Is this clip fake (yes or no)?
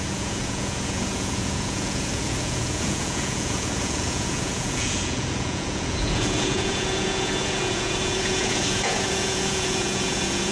yes